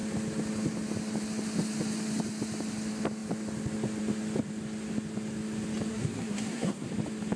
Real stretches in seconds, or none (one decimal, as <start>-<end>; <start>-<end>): 0.0-5.9; 6.9-7.4